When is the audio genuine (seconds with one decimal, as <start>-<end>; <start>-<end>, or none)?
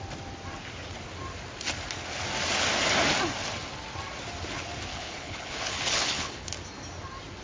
0.0-4.9; 6.5-7.4